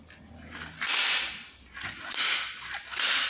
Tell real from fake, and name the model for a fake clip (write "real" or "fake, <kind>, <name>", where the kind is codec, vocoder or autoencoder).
real